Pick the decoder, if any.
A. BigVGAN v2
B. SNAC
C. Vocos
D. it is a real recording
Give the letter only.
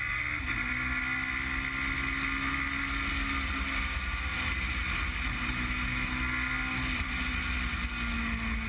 D